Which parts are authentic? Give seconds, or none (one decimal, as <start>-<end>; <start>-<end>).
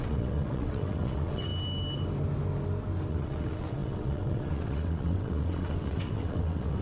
1.5-3.1